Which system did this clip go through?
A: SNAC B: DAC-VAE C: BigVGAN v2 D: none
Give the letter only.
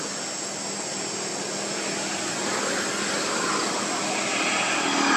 D